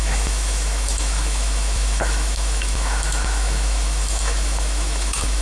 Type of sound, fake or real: fake